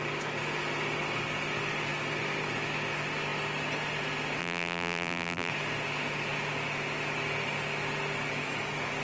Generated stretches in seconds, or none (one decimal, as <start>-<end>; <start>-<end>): 4.4-5.5